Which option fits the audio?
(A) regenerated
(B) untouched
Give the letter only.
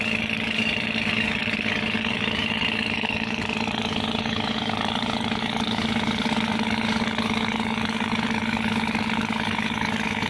A